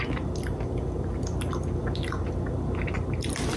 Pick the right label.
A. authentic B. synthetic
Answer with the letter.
A